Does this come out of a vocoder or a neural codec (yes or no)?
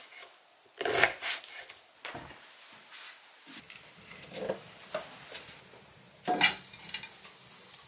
no